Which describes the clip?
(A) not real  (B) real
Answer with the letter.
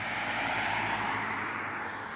B